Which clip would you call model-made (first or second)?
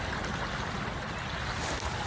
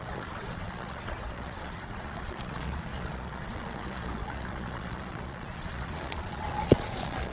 second